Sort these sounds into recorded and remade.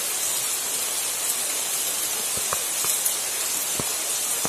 recorded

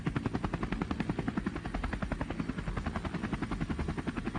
recorded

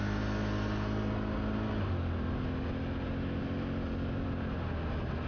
recorded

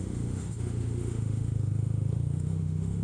remade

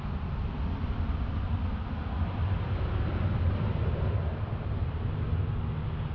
recorded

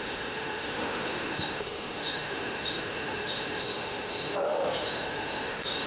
remade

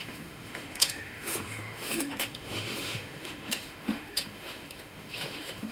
remade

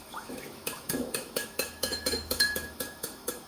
remade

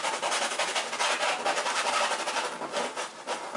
recorded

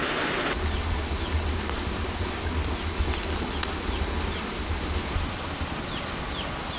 recorded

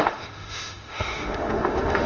remade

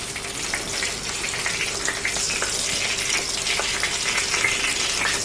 recorded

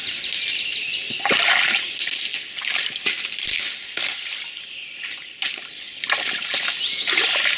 recorded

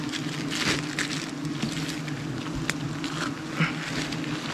recorded